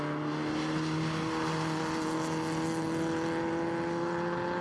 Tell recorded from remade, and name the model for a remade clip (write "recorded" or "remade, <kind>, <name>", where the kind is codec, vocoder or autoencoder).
recorded